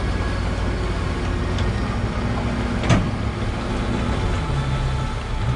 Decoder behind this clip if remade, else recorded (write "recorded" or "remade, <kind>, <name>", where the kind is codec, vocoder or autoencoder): recorded